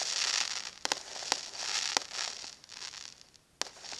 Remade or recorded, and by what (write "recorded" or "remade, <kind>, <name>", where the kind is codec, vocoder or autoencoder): recorded